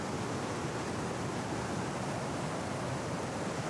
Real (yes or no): yes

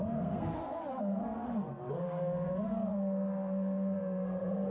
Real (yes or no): no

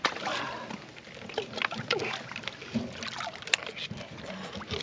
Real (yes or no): yes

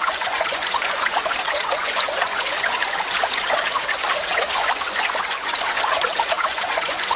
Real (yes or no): no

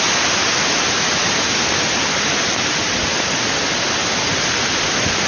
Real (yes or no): yes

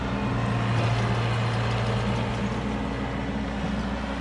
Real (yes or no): yes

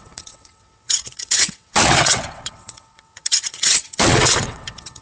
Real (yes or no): no